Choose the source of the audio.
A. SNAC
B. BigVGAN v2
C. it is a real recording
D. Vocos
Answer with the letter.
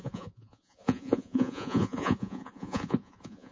D